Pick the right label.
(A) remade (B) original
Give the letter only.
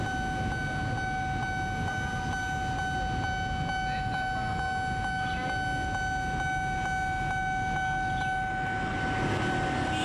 B